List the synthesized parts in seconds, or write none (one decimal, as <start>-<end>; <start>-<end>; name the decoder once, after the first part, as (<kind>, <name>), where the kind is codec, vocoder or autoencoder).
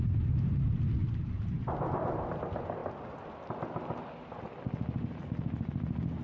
none